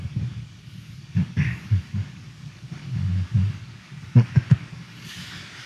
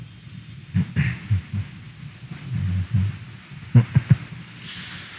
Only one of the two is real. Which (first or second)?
second